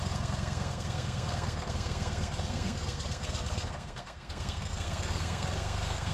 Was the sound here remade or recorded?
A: remade